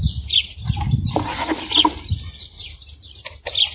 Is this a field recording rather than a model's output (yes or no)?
yes